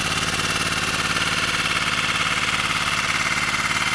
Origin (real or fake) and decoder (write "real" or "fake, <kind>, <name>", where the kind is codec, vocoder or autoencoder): real